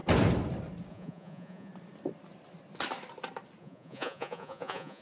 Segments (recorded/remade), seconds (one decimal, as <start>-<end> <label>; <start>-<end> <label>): 0.0-0.9 recorded; 0.9-1.7 remade; 1.7-3.6 recorded; 3.6-5.0 remade